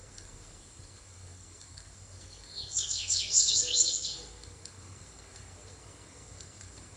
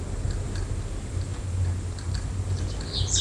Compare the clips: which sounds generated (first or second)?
first